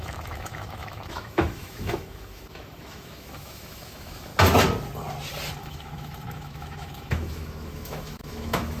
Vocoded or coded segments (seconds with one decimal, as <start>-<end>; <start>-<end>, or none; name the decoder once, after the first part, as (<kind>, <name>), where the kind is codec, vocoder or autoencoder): 0.0-4.3 (autoencoder, DAC-VAE); 5.6-8.8